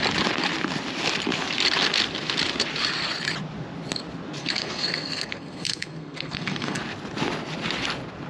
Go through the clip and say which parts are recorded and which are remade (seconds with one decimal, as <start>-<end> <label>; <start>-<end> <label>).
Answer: 0.0-4.4 recorded; 4.4-6.8 remade; 6.8-8.3 recorded